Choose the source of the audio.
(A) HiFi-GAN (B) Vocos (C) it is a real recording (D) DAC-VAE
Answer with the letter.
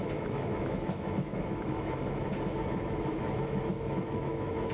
D